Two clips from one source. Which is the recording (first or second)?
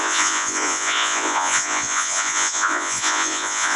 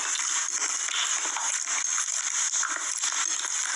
second